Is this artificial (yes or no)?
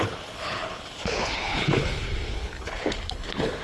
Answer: yes